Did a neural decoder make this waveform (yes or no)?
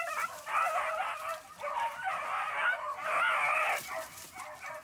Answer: yes